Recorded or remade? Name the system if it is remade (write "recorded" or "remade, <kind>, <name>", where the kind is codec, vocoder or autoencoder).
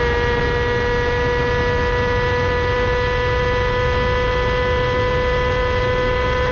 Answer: recorded